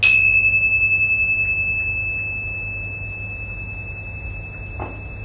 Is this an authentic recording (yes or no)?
yes